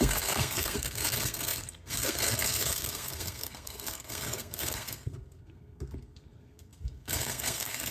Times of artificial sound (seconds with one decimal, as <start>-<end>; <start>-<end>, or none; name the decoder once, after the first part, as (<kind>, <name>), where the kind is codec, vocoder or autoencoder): 0.0-7.9 (codec, SNAC)